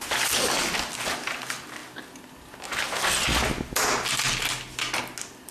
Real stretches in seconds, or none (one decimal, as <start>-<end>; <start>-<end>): 0.0-5.5